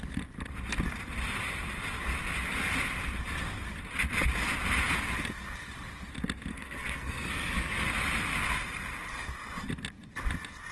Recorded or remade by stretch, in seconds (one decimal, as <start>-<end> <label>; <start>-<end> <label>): 0.0-6.5 recorded; 6.5-7.9 remade; 7.9-10.7 recorded